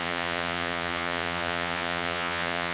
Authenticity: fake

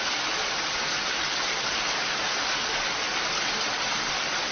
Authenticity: real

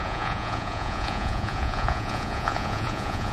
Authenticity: fake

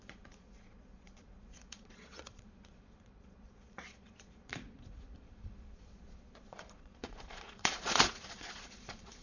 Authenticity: fake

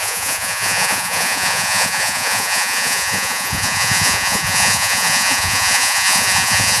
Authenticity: fake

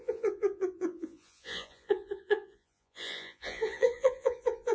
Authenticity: fake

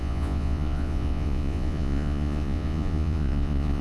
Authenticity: fake